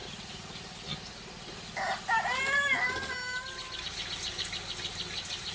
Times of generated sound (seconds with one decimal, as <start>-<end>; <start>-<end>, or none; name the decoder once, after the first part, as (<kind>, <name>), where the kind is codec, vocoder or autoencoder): none